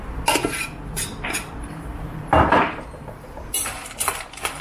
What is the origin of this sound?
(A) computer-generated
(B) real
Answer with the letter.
A